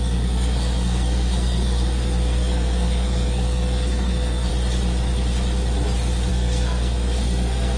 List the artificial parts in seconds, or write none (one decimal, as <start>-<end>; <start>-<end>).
0.0-4.5; 6.3-7.8